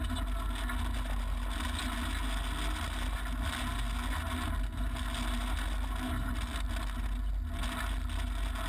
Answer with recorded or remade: recorded